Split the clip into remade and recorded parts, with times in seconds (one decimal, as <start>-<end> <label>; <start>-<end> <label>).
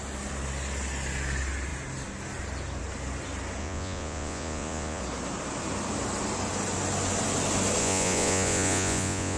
0.0-3.6 recorded; 3.6-5.0 remade; 5.0-7.8 recorded; 7.8-9.4 remade